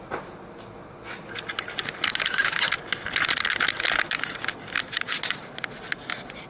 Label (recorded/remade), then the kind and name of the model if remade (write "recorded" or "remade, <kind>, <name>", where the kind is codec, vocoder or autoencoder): recorded